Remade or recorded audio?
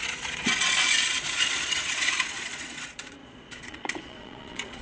remade